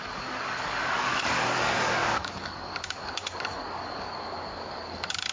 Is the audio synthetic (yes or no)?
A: yes